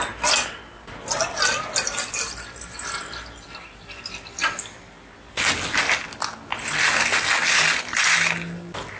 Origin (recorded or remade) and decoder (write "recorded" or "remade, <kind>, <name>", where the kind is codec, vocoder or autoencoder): recorded